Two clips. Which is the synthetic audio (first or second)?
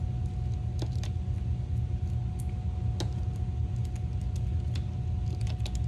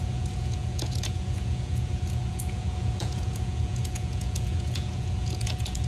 second